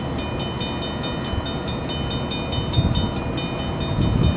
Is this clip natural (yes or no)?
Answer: yes